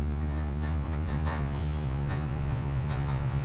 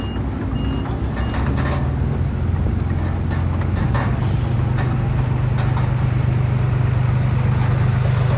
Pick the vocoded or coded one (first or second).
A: first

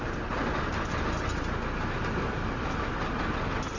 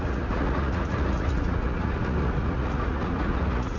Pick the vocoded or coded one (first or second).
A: second